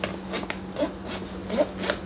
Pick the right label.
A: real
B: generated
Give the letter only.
A